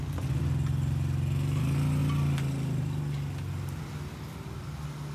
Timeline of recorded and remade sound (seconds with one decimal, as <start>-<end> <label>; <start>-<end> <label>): 0.0-5.1 recorded